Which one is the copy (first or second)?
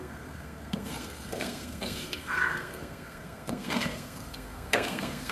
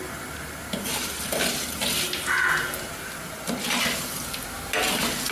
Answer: first